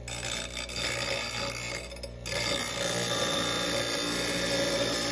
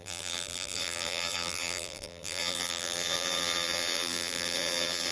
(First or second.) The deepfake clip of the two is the second